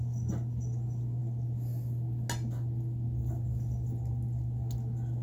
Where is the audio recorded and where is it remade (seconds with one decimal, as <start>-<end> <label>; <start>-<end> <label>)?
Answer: 0.0-5.2 recorded